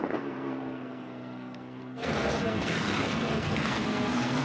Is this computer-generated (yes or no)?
yes